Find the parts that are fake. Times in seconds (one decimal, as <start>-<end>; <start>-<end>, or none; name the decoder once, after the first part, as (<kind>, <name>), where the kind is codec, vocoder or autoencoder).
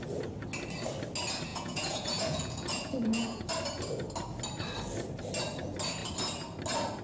1.5-3.4 (vocoder, Vocos)